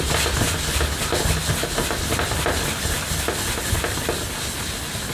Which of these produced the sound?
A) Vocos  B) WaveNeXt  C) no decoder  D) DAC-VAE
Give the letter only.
C